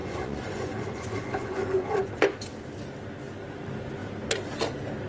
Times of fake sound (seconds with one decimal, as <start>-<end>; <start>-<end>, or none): 0.0-2.1